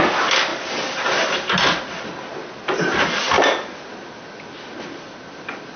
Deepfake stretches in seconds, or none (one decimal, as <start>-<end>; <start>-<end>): none